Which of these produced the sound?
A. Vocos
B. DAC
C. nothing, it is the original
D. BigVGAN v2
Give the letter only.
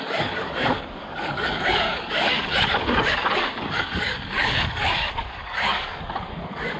B